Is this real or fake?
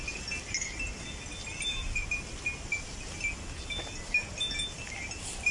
real